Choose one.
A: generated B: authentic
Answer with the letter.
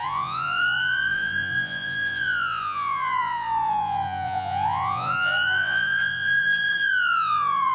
A